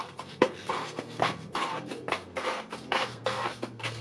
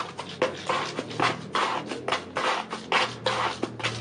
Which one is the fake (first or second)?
first